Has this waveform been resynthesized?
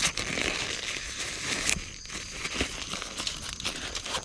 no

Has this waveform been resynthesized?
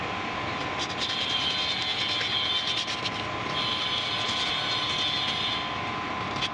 no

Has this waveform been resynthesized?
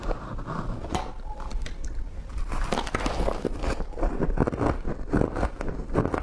no